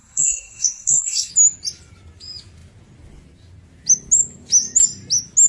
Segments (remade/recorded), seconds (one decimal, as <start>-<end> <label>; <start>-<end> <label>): 0.0-1.3 remade; 1.3-5.5 recorded